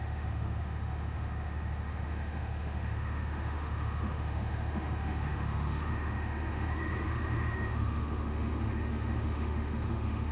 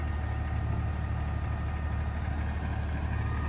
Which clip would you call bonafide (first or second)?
second